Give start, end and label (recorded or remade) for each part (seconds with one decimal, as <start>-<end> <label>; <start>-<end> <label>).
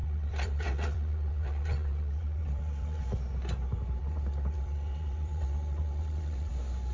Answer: 0.0-3.0 remade; 3.0-4.0 recorded; 4.0-6.5 remade; 6.5-6.9 recorded